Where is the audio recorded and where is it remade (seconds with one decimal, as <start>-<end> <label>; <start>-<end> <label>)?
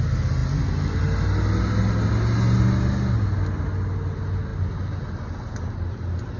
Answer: 0.0-6.4 recorded